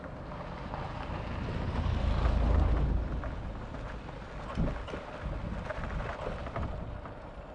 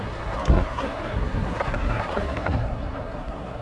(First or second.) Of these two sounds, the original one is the first